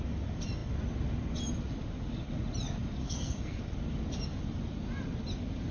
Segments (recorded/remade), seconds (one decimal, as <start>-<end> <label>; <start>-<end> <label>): 0.0-3.0 recorded; 3.0-3.6 remade; 3.6-5.7 recorded